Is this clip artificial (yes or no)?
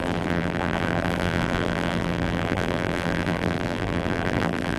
yes